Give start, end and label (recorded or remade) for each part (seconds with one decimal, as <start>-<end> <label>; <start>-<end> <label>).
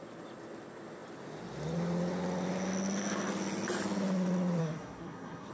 0.0-4.6 recorded; 4.6-5.5 remade